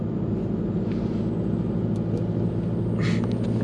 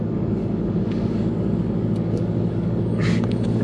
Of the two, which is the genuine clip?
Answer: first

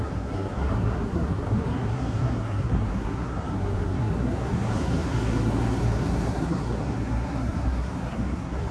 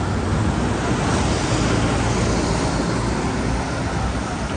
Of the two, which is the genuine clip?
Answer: second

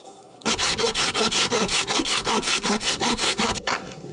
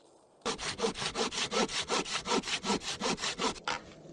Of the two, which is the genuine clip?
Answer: second